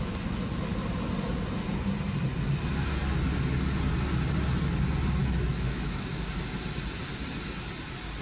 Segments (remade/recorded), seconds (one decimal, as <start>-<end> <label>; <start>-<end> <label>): 0.0-5.2 recorded; 5.2-6.1 remade; 6.1-8.2 recorded